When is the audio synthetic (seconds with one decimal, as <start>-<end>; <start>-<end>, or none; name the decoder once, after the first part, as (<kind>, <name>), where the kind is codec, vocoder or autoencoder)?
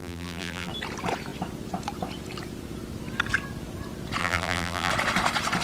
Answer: 0.0-0.7 (vocoder, BigVGAN v2); 4.2-4.9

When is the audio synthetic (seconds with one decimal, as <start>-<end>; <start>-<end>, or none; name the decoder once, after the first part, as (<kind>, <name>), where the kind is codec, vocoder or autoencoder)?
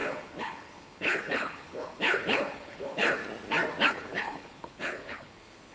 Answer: 0.0-3.2 (codec, HILCodec); 3.9-5.7